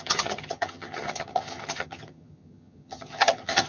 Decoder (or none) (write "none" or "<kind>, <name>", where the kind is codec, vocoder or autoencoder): vocoder, HiFi-GAN